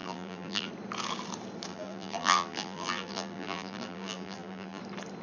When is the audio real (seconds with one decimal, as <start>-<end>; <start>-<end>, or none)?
0.7-1.7; 4.8-5.2